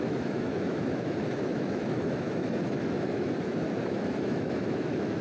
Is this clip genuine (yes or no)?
no